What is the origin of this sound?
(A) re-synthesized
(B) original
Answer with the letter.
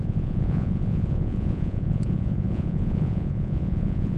A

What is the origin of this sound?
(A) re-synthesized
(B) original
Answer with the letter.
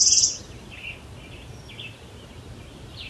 B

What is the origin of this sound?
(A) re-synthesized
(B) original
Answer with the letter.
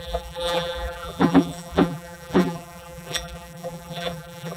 A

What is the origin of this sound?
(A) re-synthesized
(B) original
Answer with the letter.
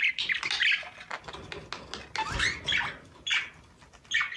B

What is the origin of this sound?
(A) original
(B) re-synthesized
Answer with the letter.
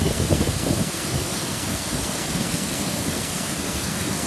B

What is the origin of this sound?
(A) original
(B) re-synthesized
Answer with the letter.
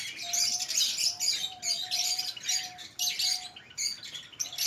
A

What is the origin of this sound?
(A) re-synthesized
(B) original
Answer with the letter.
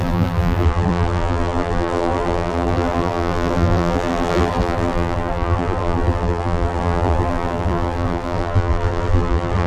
A